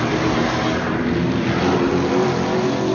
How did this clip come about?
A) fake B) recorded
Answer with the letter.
B